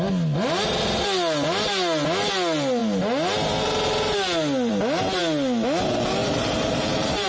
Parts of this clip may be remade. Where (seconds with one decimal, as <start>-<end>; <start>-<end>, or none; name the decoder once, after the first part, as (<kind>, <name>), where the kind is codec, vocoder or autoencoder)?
6.2-7.3 (vocoder, BigVGAN v2)